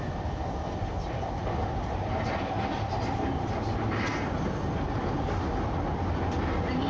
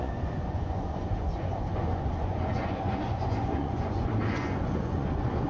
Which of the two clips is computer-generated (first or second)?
second